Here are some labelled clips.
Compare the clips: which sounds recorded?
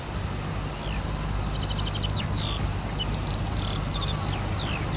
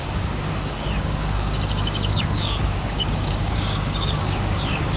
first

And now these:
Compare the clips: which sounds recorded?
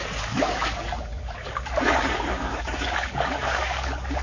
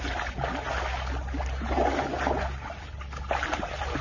second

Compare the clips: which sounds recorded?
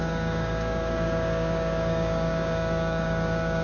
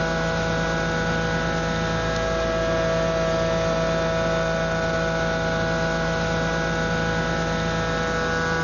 second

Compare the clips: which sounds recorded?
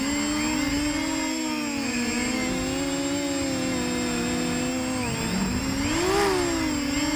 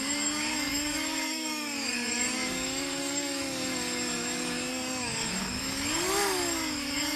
first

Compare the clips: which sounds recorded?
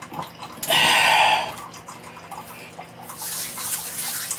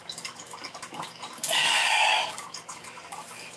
first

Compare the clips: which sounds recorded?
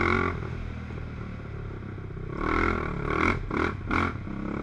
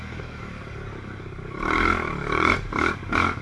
first